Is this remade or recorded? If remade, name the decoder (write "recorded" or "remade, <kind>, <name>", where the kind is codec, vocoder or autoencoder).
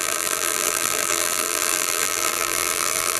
remade, vocoder, BigVGAN v2